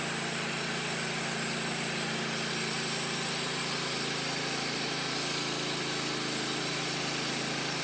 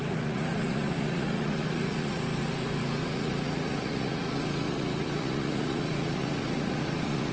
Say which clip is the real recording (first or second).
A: first